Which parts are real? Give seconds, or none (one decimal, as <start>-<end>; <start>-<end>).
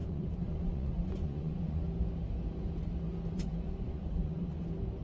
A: 1.8-3.3; 4.6-5.0